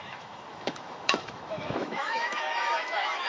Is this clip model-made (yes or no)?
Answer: yes